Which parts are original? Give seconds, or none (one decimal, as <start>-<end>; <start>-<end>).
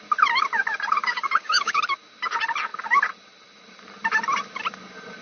0.0-1.0; 1.8-5.2